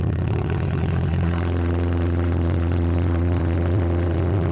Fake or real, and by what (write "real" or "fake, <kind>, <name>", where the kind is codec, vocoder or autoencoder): fake, vocoder, Vocos